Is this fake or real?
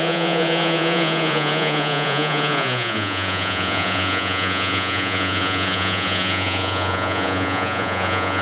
fake